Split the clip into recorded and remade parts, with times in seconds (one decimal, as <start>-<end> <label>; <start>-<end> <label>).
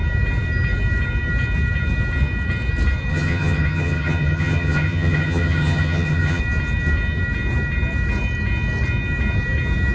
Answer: 0.0-3.1 recorded; 3.1-6.4 remade; 6.4-9.9 recorded